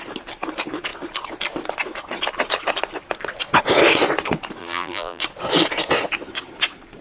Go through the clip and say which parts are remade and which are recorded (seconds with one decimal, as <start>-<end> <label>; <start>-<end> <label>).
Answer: 0.0-4.6 recorded; 4.6-5.2 remade; 5.2-7.0 recorded